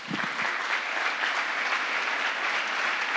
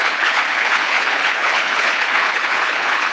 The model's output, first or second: second